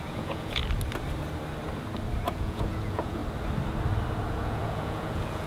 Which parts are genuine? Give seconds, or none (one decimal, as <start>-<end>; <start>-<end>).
0.6-2.3; 3.2-4.3